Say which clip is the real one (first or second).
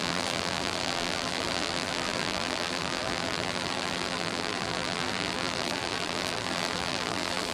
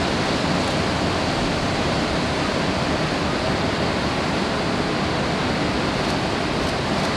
second